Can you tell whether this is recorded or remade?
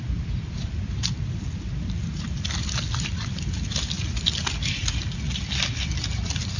remade